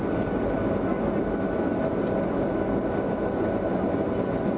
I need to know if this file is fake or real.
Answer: real